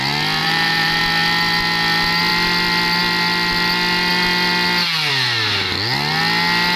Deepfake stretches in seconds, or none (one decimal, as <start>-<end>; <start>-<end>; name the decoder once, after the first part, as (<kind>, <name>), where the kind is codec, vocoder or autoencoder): 0.4-1.0 (vocoder, BigVGAN v2)